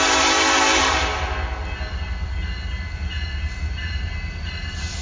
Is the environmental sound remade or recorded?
recorded